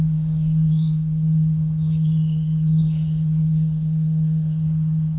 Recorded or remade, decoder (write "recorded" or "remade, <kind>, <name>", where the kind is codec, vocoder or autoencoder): remade, codec, SNAC